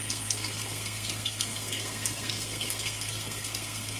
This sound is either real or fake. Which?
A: fake